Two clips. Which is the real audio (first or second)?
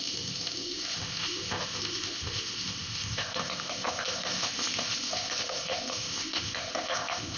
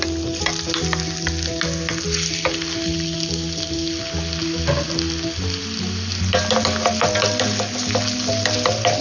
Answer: second